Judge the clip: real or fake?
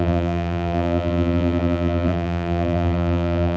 fake